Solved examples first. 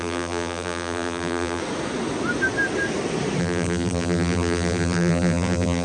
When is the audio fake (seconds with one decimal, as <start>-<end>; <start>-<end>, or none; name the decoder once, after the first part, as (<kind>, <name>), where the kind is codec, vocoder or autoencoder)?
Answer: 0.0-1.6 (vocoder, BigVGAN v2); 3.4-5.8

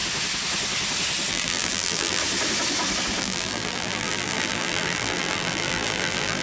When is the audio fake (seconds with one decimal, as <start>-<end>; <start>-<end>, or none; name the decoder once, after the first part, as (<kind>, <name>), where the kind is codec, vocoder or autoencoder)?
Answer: 1.3-2.2 (vocoder, BigVGAN v2); 3.2-6.4

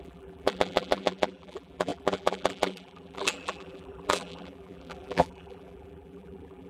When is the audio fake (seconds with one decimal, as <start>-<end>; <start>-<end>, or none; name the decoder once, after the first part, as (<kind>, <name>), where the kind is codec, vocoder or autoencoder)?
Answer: 0.0-6.7 (vocoder, BigVGAN v2)